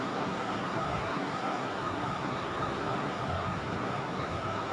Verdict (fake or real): fake